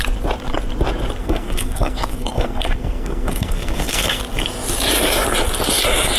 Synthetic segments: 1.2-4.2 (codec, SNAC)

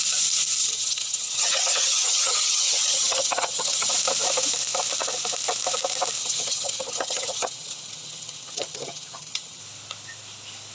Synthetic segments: 0.6-3.9 (vocoder, HiFi-GAN); 6.2-9.6

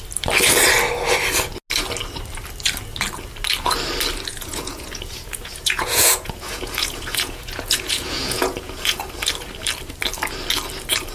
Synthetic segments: 4.3-9.0 (vocoder, Vocos)

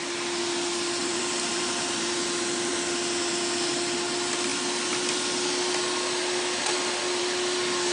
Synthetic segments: 1.0-2.1 (vocoder, BigVGAN v2)